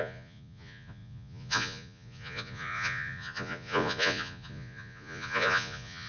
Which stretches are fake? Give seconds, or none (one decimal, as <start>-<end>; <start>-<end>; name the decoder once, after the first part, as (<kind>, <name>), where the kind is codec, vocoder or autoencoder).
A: 0.0-6.1 (vocoder, Vocos)